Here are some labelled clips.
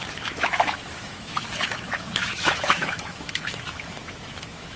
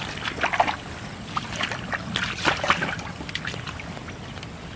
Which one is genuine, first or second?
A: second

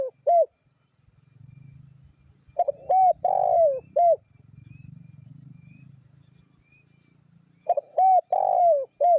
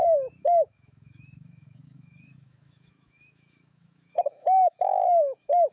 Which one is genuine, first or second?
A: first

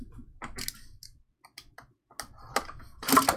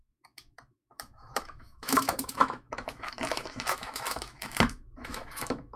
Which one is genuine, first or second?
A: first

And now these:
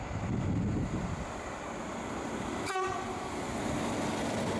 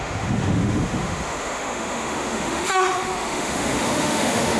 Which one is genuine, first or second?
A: first